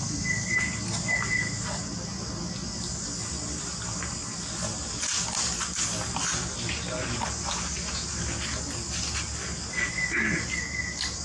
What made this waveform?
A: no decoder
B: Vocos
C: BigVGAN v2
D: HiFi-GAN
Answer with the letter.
A